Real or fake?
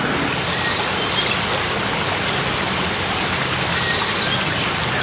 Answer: real